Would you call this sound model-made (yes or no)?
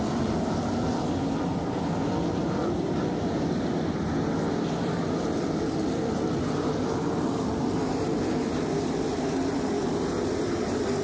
yes